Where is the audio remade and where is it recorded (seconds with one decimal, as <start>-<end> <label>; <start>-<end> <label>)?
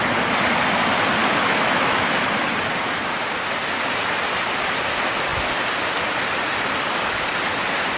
0.0-1.2 recorded; 1.2-2.2 remade; 2.2-8.0 recorded